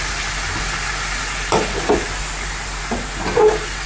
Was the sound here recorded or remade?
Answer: recorded